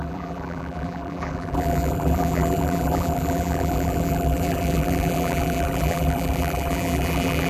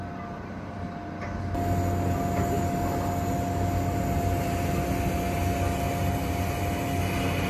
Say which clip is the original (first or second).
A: second